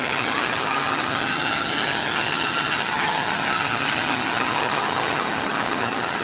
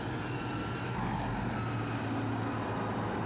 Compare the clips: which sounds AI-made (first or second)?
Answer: first